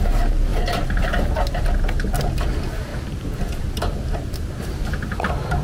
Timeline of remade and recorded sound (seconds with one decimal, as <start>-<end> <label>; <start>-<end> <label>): 0.0-5.6 recorded